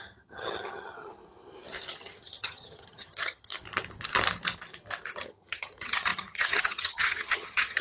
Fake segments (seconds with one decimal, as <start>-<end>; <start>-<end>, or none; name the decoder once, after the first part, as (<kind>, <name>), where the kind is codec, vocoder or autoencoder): 0.0-1.1 (vocoder, HiFi-GAN); 1.9-3.5; 5.1-7.8